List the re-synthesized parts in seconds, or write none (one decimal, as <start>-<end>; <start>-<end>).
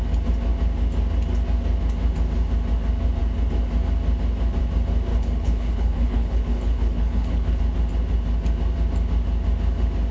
5.1-7.6